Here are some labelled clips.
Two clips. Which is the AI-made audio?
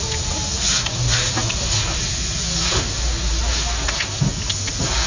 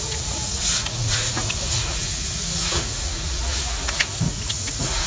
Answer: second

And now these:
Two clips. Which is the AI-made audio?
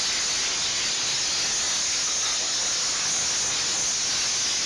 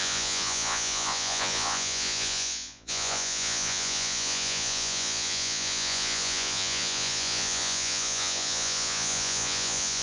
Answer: second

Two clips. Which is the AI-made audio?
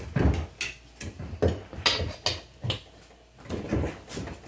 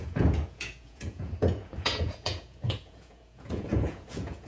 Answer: second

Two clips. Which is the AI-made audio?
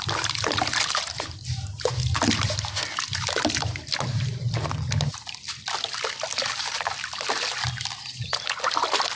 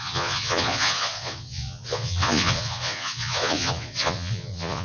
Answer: second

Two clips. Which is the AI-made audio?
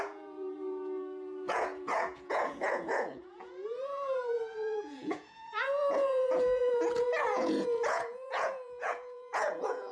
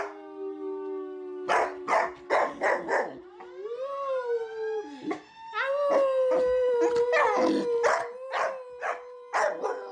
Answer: first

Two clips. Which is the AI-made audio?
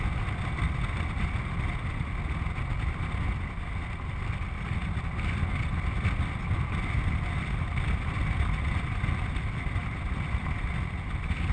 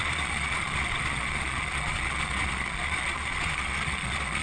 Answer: second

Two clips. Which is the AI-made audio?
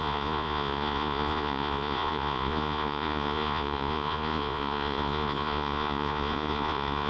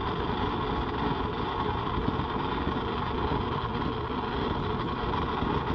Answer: first